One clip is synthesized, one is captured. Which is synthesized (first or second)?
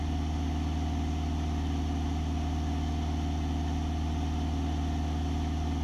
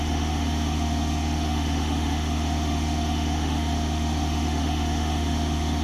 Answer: second